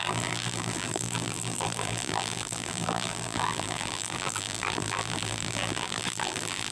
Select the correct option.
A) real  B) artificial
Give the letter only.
B